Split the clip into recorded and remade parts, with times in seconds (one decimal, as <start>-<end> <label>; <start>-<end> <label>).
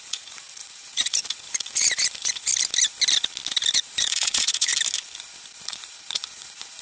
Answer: 0.0-2.5 remade; 2.5-3.7 recorded; 3.7-4.7 remade; 4.7-5.6 recorded; 5.6-6.8 remade